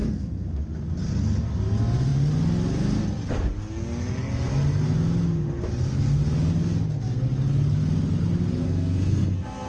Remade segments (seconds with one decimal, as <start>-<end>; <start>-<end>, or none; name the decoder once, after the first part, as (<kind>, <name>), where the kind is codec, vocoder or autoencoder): 0.0-0.6 (codec, SNAC); 8.6-9.7